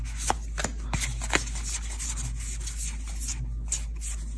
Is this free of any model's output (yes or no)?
yes